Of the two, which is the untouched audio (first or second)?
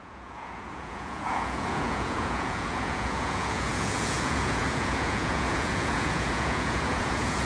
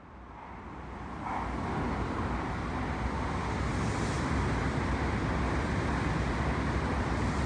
second